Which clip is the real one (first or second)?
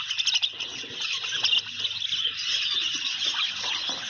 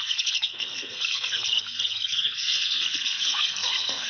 first